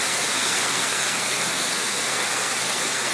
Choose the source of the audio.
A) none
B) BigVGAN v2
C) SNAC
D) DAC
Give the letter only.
C